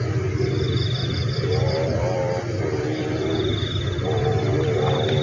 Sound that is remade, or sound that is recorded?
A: recorded